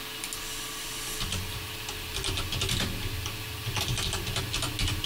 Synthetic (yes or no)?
no